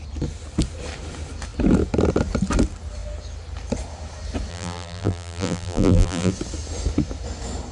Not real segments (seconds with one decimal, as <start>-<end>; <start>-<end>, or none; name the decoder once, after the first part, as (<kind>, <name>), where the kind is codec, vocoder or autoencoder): 4.5-6.3 (vocoder, BigVGAN v2)